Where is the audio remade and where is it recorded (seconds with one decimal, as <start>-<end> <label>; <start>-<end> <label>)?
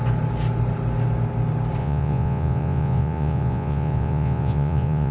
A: 0.0-1.8 recorded; 1.8-5.1 remade